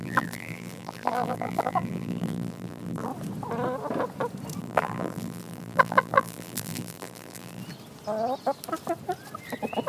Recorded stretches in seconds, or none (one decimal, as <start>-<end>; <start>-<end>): 3.1-4.6; 7.6-9.9